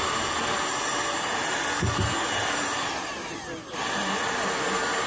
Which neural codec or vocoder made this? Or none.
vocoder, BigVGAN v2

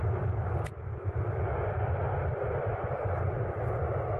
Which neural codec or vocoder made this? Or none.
none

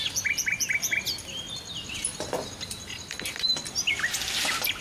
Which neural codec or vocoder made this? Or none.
none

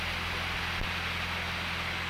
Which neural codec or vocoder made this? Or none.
none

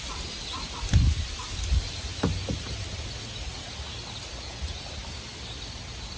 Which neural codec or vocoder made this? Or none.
none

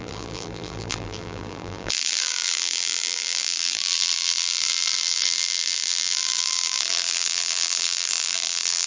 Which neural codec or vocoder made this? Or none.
vocoder, BigVGAN v2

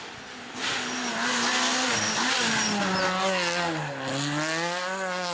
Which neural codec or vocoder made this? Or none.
none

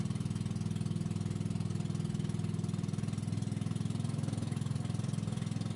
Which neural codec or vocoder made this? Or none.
none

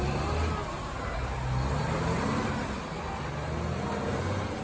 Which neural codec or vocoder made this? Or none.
none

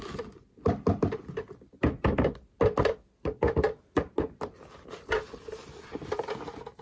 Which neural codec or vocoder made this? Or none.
none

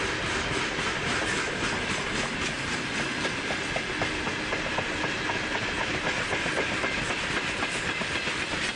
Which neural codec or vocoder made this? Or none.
none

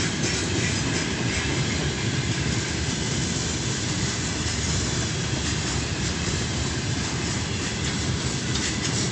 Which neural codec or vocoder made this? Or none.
vocoder, BigVGAN v2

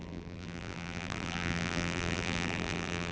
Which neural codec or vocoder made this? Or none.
vocoder, BigVGAN v2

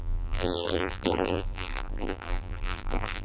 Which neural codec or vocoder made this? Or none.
vocoder, BigVGAN v2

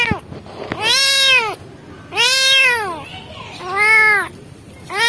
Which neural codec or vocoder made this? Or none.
none